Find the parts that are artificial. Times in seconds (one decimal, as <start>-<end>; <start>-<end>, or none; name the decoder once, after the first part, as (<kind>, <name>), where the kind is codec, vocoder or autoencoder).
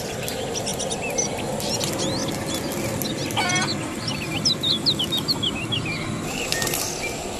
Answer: none